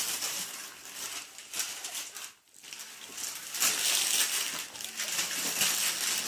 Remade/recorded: recorded